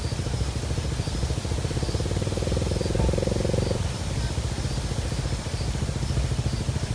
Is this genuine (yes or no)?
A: yes